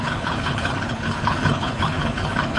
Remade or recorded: remade